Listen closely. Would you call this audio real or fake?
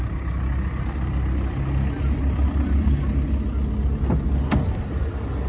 real